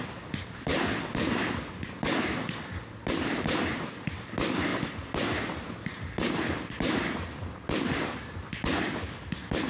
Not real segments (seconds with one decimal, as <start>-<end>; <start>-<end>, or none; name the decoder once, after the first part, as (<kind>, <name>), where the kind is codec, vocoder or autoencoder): none